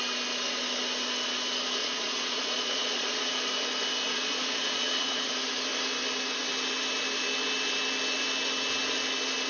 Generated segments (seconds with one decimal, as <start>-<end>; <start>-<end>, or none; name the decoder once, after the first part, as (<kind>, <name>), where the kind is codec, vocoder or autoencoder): 1.8-3.3 (vocoder, Vocos); 4.1-5.3